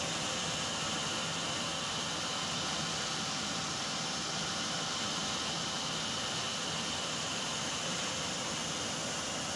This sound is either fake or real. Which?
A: fake